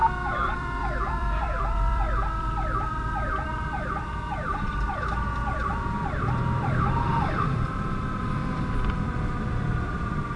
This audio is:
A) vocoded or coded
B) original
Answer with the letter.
A